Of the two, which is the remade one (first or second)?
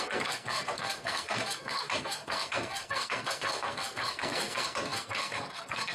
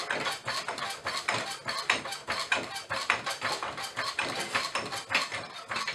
first